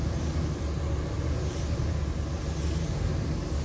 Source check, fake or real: real